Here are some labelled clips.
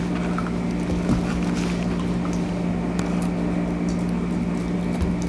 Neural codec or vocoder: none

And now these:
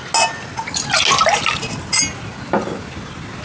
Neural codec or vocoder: none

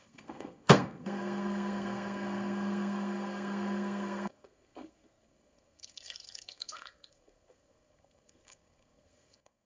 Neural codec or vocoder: codec, SNAC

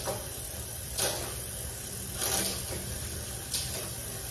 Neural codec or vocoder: none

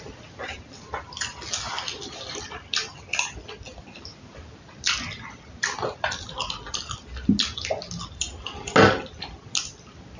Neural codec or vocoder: none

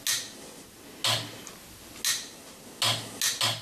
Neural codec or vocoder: none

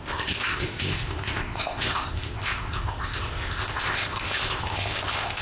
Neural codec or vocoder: codec, ZipCodec